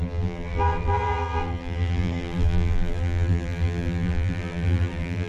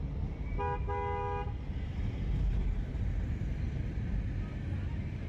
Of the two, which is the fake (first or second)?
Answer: first